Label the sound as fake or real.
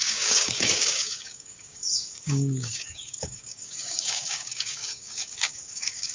fake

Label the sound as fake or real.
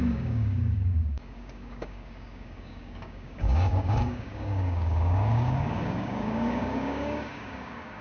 fake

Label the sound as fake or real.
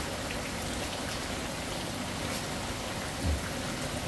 real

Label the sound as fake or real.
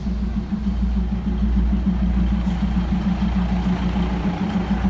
real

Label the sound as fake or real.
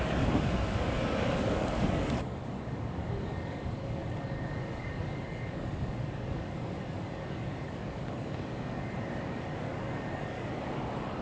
fake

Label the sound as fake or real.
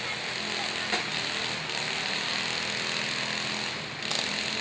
real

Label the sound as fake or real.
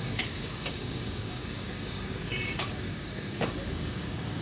fake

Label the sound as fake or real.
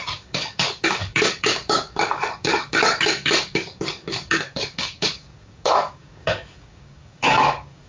fake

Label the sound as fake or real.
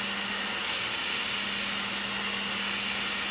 real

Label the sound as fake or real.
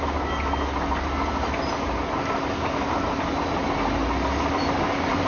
real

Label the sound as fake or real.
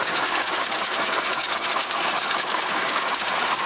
fake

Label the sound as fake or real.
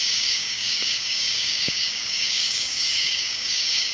fake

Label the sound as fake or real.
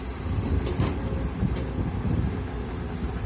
real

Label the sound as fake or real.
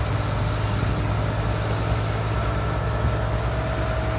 real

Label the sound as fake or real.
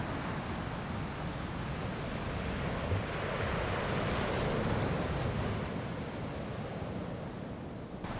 real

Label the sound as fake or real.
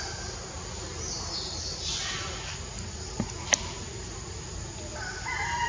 real